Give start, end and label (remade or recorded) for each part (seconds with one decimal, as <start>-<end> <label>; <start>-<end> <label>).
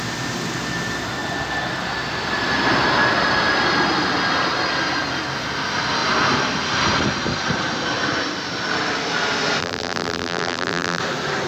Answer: 0.0-9.6 recorded; 9.6-11.0 remade; 11.0-11.5 recorded